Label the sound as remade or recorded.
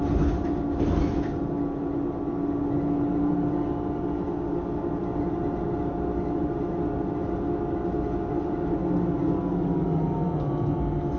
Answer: recorded